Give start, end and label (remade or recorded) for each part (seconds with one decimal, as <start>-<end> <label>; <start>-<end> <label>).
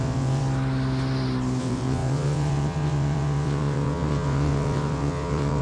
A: 0.0-0.4 remade; 0.4-1.6 recorded; 1.6-5.6 remade